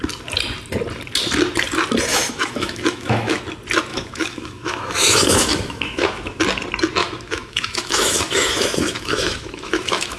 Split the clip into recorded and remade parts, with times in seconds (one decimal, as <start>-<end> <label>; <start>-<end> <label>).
0.0-2.1 recorded; 2.1-3.4 remade; 3.4-3.9 recorded; 3.9-6.4 remade; 6.4-7.0 recorded; 7.0-10.2 remade